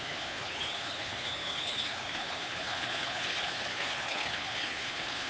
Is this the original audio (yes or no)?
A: no